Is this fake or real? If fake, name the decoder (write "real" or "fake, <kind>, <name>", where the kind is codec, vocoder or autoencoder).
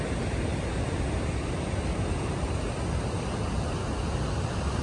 real